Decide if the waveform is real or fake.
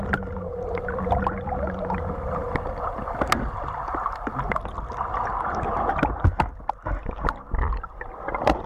real